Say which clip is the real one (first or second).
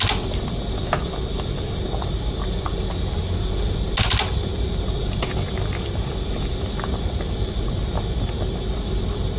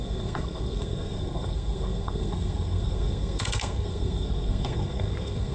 first